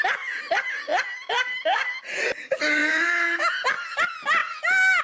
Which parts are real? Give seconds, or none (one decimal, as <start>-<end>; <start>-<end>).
0.0-2.8; 3.5-5.0